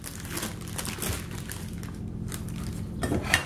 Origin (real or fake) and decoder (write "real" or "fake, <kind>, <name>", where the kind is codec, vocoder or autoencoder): real